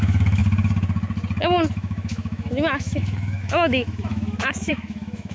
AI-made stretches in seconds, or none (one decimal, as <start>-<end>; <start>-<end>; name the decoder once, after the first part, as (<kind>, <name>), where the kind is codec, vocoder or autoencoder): 0.0-0.4 (autoencoder, DAC-VAE); 1.7-5.3